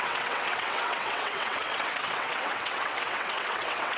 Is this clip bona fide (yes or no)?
no